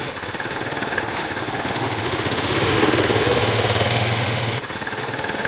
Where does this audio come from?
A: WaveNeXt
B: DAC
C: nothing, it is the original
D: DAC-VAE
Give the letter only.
D